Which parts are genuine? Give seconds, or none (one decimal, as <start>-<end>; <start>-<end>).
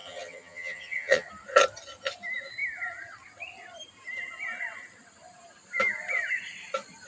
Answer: 1.3-7.1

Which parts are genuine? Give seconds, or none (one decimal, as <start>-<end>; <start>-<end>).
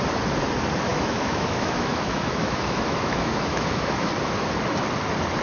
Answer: 0.0-0.9; 4.1-5.4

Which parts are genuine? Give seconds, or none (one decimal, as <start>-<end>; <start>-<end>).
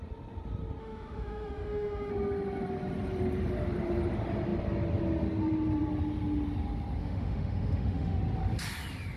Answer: 0.0-0.8; 2.1-7.0; 8.2-9.2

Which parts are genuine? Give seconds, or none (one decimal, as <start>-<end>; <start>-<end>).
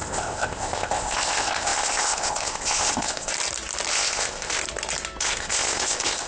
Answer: 3.3-3.9; 4.6-5.2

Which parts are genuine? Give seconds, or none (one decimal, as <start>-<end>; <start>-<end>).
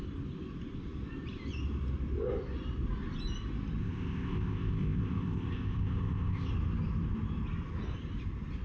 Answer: 0.0-3.8; 6.5-8.6